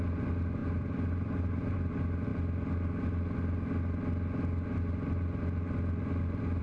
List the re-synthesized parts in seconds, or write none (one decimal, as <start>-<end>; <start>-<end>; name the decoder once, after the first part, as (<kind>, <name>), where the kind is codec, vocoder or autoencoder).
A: 0.6-1.9 (vocoder, BigVGAN v2)